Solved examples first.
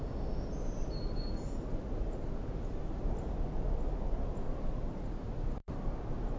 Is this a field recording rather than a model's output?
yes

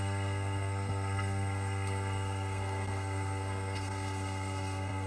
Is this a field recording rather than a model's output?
no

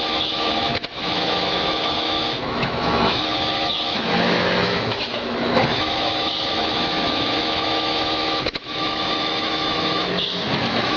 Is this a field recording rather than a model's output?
no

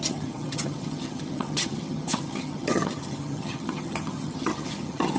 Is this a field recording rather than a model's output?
no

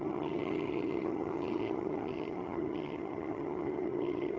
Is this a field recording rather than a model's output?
no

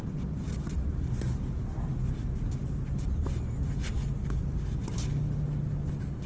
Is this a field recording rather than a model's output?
yes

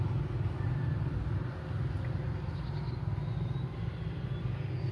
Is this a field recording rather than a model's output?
yes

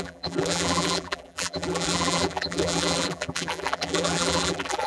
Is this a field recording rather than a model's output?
no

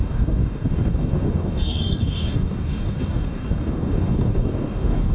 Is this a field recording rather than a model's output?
no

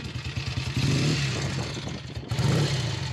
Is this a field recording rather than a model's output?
yes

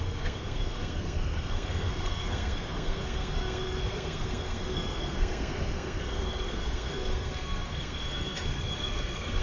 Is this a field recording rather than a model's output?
no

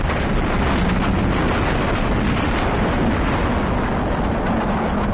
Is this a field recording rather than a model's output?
yes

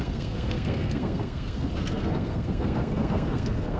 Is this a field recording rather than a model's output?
no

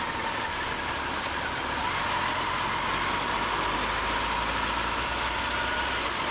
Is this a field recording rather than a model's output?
yes